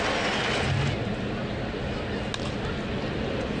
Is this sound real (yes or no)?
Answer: yes